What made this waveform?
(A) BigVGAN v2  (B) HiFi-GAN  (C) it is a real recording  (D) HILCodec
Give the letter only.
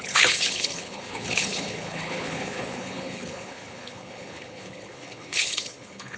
D